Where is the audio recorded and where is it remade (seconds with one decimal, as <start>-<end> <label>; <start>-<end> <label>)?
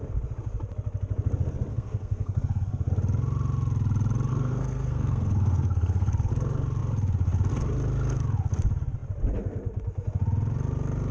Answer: 0.0-1.7 recorded; 1.7-2.9 remade; 2.9-4.3 recorded; 4.3-6.3 remade; 6.3-11.1 recorded